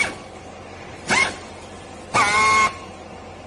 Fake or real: fake